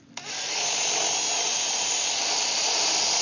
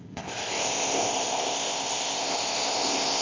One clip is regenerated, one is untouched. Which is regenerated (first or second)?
second